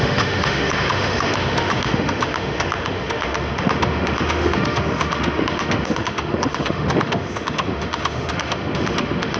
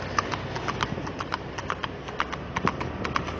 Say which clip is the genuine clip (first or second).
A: second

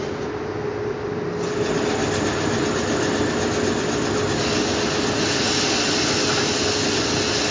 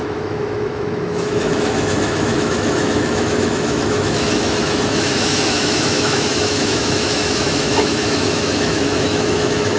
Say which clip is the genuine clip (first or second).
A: first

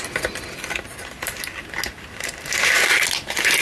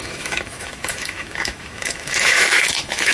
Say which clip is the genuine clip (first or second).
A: first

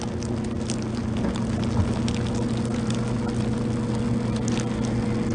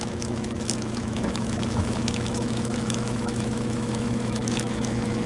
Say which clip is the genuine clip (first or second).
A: first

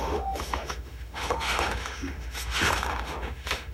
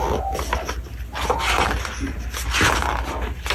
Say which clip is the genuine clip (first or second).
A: second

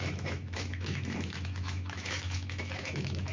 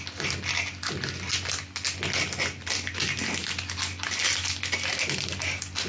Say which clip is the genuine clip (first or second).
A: second